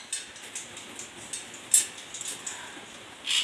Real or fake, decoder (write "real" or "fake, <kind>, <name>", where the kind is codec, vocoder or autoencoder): real